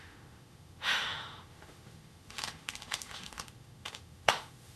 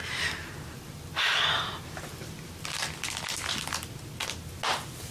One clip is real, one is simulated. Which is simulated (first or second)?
first